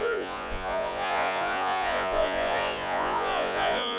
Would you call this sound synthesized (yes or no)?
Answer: yes